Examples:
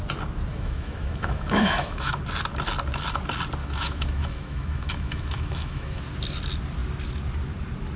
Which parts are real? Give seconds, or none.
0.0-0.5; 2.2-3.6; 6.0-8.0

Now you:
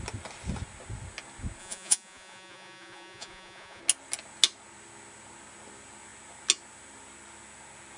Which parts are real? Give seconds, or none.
0.0-1.6; 3.8-8.0

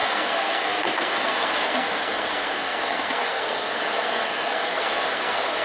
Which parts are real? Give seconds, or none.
none

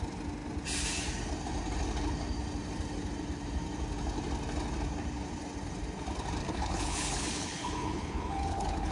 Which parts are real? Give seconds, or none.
0.0-6.4